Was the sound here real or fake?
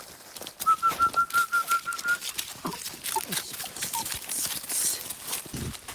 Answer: real